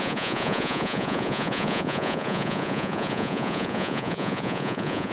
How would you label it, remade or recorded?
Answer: remade